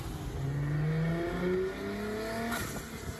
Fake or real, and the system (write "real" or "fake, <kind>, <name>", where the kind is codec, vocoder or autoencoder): real